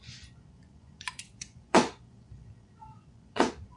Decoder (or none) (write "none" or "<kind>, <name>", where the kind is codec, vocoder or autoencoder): vocoder, Vocos